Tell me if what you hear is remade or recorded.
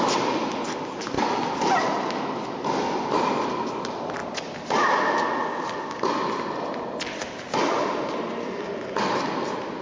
recorded